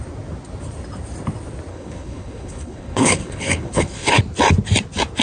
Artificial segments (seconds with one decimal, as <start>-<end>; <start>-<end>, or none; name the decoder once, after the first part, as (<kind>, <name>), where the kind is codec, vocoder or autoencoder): 1.7-4.2 (codec, HILCodec)